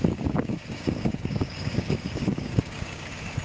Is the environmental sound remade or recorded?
remade